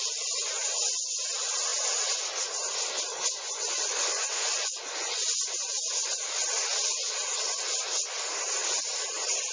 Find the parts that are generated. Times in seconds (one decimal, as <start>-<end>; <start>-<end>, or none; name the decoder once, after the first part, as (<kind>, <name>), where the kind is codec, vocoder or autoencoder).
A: 3.1-5.2 (vocoder, Vocos)

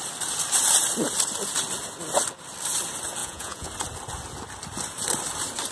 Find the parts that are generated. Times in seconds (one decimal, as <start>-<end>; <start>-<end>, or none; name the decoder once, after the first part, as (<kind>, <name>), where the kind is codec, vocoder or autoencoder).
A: 3.2-3.7 (vocoder, Vocos)

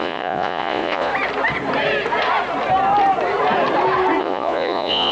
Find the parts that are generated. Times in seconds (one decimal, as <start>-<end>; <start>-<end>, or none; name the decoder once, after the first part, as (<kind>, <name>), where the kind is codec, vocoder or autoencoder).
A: 0.0-1.1 (vocoder, Vocos); 4.2-5.1

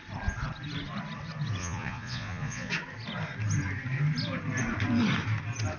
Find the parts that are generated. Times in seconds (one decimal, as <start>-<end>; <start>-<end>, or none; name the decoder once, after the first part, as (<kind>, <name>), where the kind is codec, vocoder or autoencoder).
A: 1.6-2.7 (vocoder, Vocos)

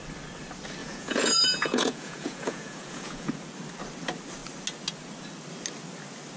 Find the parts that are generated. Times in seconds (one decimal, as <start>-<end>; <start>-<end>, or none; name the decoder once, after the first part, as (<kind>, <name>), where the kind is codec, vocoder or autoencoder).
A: 0.8-3.3 (vocoder, Vocos)

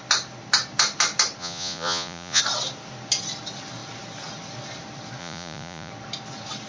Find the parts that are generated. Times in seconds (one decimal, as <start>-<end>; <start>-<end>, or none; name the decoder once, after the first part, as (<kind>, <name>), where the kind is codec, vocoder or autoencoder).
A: 1.4-2.4 (vocoder, Vocos); 5.2-5.9

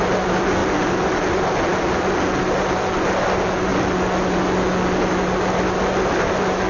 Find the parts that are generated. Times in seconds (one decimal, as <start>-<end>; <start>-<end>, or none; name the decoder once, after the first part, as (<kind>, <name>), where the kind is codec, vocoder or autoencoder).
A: none

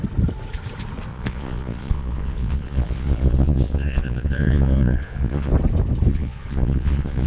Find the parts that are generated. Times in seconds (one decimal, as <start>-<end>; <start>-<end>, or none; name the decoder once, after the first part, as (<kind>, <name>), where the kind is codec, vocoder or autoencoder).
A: 1.1-5.5 (vocoder, Vocos); 6.1-7.3